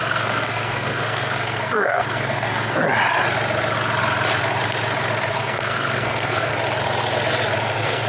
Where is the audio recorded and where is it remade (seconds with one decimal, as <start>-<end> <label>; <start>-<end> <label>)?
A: 0.0-2.8 remade; 2.8-5.3 recorded; 5.3-6.5 remade; 6.5-7.6 recorded; 7.6-8.1 remade

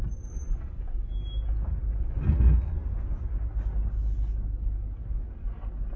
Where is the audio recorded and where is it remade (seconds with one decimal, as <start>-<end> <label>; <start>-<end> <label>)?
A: 0.0-6.0 recorded

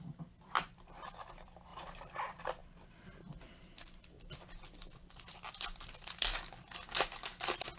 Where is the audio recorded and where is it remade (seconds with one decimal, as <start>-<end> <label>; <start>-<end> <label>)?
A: 0.0-1.7 remade; 1.7-2.2 recorded; 2.2-7.8 remade